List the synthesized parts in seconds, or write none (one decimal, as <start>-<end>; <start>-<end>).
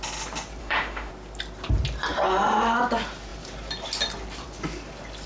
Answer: 0.6-1.1